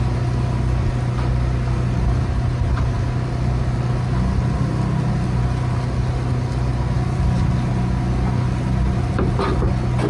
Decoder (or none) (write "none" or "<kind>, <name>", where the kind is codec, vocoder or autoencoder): none